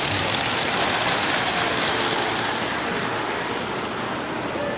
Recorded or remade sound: recorded